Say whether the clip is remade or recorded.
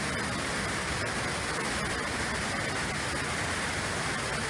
recorded